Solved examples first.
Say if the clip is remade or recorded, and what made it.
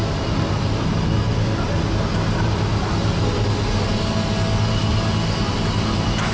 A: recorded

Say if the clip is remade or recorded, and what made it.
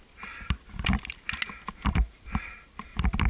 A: recorded